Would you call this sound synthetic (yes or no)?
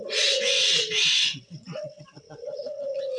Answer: yes